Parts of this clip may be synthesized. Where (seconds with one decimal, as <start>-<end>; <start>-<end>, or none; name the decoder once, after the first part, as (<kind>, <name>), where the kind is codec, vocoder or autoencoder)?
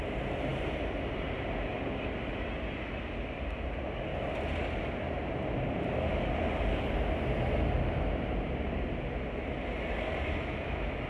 none